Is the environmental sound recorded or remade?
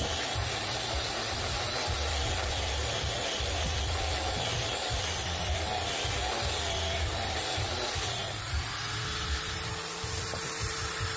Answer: recorded